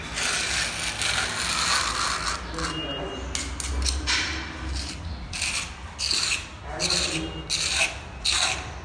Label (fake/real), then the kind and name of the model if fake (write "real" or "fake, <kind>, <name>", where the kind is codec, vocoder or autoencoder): real